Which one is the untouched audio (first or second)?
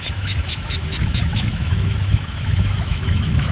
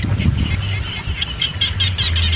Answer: second